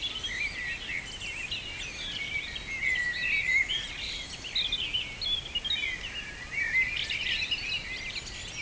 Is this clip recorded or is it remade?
recorded